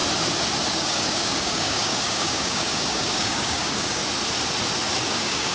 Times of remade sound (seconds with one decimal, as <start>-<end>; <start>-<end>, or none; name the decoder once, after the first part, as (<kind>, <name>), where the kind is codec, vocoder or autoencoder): 0.7-4.0 (codec, DAC); 5.1-5.5